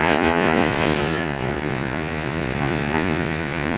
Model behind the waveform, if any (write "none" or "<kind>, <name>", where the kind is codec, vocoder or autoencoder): vocoder, Vocos